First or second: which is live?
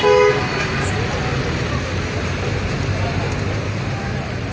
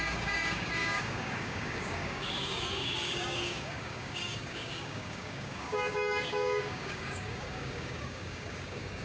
first